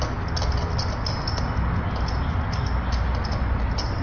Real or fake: real